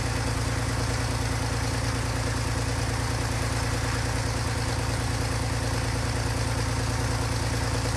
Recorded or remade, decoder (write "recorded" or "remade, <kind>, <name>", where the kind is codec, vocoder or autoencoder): recorded